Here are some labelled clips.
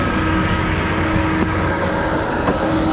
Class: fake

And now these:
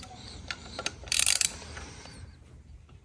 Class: fake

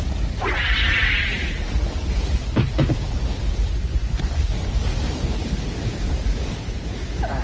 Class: fake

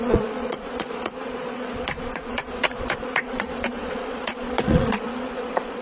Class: fake